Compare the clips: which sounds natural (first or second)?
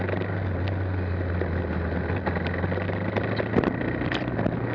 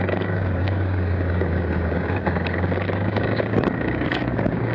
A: first